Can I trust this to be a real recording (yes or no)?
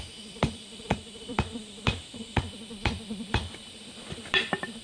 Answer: no